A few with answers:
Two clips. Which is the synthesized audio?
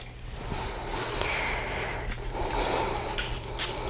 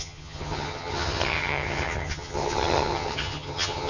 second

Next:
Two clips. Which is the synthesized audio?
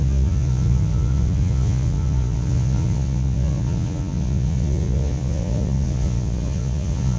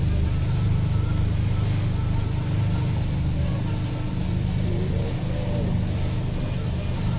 first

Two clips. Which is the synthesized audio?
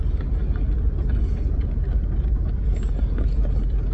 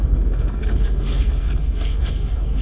second